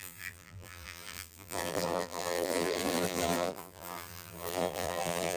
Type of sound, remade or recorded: remade